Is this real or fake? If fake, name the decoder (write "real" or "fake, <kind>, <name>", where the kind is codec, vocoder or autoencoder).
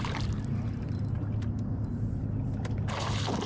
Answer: real